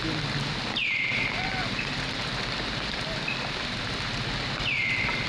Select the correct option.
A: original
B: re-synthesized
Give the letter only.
A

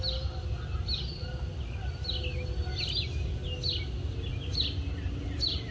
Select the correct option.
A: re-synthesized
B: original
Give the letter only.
B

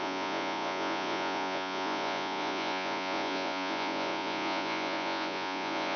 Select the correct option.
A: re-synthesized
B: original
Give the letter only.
A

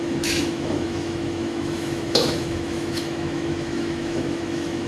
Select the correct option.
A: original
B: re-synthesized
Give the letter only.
B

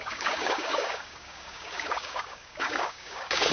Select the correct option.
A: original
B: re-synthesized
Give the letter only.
B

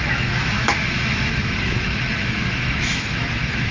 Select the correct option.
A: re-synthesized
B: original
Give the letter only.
A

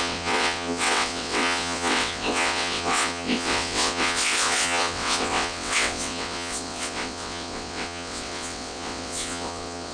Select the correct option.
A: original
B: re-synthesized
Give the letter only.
B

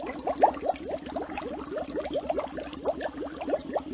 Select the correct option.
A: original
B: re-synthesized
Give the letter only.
A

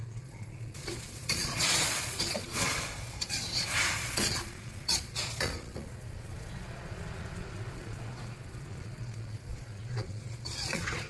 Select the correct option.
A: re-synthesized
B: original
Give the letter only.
A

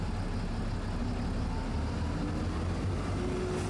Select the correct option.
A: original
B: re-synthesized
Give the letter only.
A